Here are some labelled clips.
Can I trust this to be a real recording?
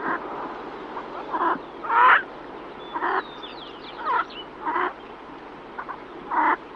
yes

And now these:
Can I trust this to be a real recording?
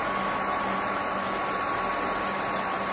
yes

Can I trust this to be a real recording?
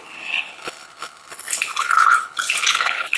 no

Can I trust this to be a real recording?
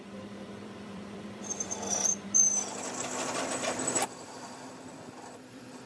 no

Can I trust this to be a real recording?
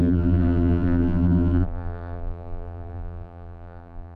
no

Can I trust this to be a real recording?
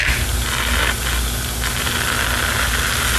yes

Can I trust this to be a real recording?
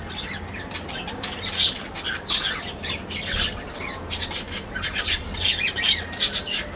yes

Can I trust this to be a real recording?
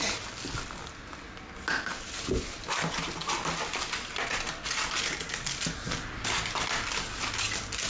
yes